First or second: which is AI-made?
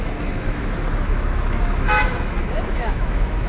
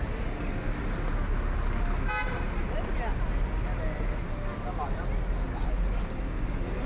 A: first